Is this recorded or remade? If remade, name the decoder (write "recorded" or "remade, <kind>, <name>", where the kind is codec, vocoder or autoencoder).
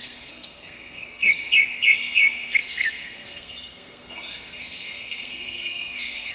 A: remade, codec, SNAC